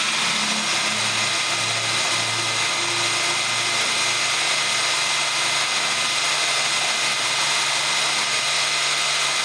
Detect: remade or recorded recorded